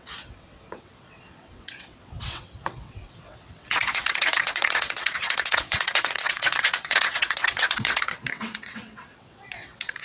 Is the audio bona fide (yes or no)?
no